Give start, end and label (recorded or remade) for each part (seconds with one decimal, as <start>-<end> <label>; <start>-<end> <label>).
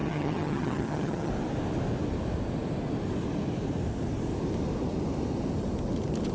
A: 0.0-1.3 remade; 1.3-6.3 recorded